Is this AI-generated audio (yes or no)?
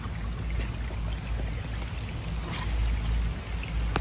no